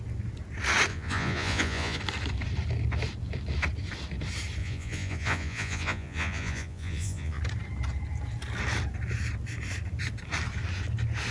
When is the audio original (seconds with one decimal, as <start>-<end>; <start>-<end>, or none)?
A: 0.0-0.9; 2.0-4.6; 7.4-11.3